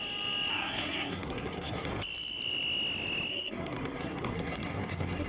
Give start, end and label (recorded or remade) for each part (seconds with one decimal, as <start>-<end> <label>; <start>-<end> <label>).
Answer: 0.0-0.5 recorded; 0.5-1.9 remade; 1.9-3.3 recorded; 3.3-5.3 remade